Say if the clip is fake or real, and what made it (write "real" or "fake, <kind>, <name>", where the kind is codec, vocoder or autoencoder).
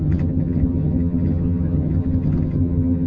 fake, vocoder, HiFi-GAN